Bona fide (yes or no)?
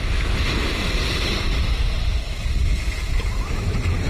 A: yes